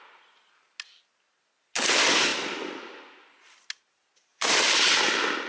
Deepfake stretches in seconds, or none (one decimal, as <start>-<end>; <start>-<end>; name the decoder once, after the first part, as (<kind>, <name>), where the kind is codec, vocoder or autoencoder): 4.3-4.9 (vocoder, BigVGAN v2)